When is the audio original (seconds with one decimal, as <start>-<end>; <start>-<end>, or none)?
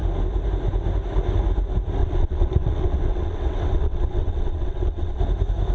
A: 0.0-2.0; 5.2-5.7